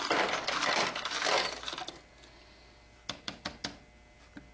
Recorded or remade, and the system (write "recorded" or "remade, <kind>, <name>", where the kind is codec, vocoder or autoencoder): recorded